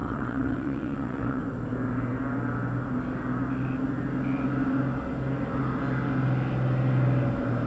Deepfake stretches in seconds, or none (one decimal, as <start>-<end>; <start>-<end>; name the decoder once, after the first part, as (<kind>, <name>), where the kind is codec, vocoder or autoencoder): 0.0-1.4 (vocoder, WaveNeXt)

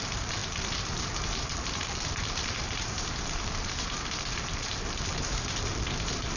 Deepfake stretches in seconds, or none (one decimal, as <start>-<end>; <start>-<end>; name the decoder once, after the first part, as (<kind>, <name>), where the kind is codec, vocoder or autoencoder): 0.0-6.4 (vocoder, BigVGAN v2)

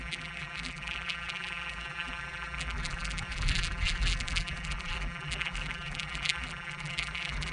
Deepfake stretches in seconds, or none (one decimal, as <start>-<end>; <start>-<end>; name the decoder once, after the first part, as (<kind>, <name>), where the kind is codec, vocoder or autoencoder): 0.0-7.5 (vocoder, BigVGAN v2)